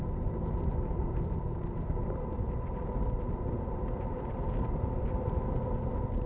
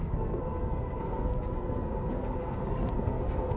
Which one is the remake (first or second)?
second